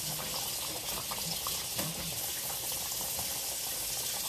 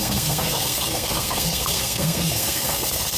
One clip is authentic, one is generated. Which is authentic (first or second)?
first